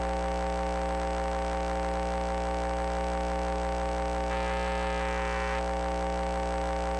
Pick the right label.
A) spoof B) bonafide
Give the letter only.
B